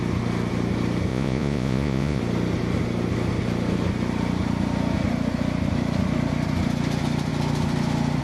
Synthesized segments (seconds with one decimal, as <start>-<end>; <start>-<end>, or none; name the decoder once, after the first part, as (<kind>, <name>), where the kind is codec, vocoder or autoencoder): 1.1-2.2 (vocoder, Vocos)